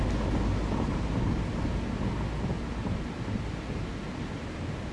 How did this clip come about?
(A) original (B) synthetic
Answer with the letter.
A